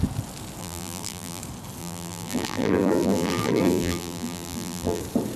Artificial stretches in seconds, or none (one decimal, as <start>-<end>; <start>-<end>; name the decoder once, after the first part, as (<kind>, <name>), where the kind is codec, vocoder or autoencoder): 0.6-1.4 (vocoder, BigVGAN v2); 1.8-5.0